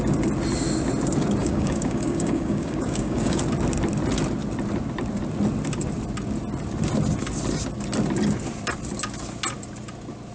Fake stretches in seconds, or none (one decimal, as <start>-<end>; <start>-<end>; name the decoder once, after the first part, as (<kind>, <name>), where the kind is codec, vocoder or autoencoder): 1.4-3.4 (codec, DAC)